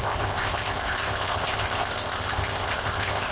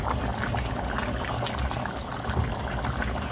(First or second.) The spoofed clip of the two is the first